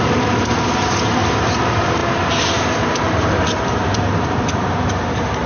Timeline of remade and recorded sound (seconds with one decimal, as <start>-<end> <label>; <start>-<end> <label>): 0.0-5.5 remade